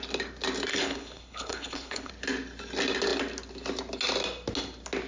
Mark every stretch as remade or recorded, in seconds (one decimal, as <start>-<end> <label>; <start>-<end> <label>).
0.0-0.7 recorded; 0.7-2.1 remade; 2.1-5.1 recorded